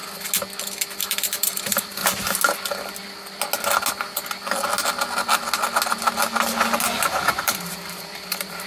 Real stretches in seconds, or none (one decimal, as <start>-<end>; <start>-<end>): 0.0-1.0; 2.0-6.8